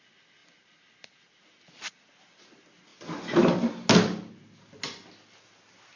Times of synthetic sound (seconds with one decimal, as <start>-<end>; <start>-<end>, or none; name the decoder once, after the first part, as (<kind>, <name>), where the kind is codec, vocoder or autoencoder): none